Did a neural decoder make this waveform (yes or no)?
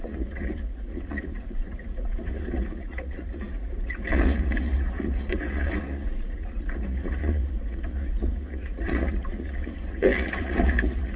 yes